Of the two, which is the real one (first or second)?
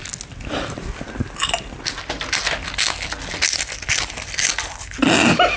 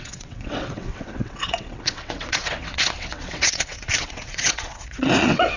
first